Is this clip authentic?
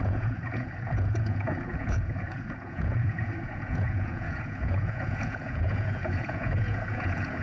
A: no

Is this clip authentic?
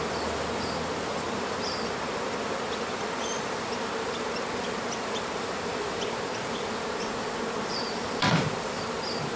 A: no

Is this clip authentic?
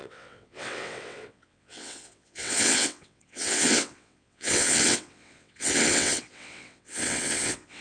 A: no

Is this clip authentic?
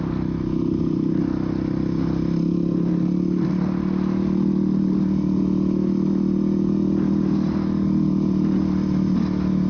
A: yes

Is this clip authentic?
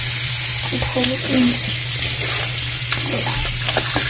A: yes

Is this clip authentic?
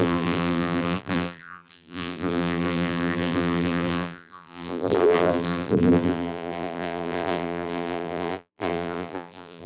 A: no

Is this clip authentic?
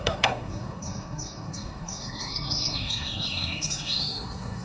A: no